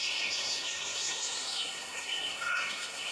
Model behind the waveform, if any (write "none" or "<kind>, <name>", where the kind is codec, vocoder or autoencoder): codec, SNAC